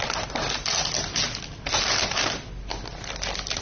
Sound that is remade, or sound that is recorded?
recorded